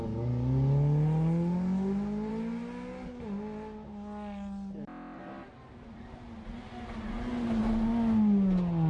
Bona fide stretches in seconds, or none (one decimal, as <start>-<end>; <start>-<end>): 0.0-8.9